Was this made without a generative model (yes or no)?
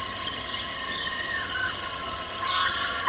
no